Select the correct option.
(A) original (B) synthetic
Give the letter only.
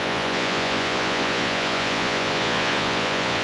B